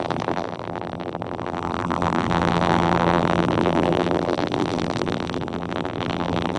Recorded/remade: remade